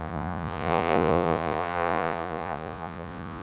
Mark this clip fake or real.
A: fake